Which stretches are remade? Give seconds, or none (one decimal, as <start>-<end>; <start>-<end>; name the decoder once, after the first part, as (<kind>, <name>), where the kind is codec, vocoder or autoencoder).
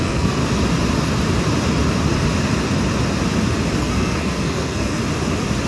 0.0-0.4 (codec, SNAC); 3.8-5.0